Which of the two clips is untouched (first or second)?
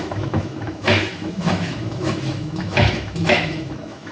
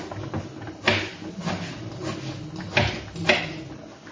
second